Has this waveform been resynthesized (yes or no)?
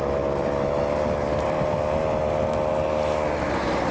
no